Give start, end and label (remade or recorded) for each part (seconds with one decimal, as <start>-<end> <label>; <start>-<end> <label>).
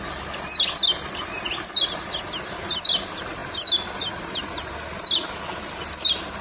0.0-6.4 recorded